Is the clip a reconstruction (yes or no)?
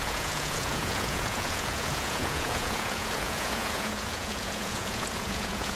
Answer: yes